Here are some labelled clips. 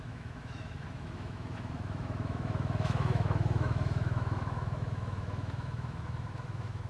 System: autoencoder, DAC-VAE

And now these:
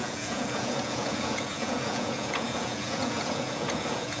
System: vocoder, Vocos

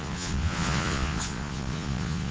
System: vocoder, Vocos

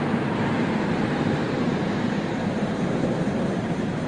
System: vocoder, BigVGAN v2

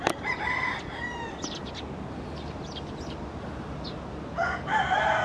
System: none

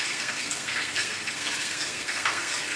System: codec, SNAC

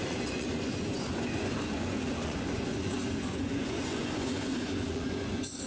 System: vocoder, Vocos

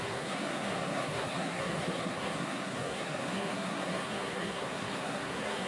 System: codec, SNAC